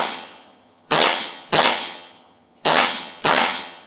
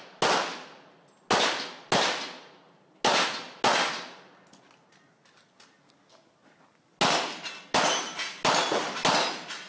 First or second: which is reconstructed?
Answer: first